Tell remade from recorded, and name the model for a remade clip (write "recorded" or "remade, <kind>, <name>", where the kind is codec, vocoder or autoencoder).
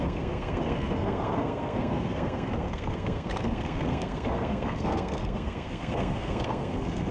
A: remade, codec, SNAC